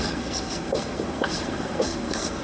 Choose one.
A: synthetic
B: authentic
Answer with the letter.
A